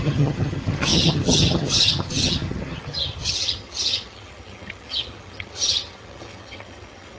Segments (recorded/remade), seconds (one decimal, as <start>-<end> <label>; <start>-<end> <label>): 0.0-7.2 remade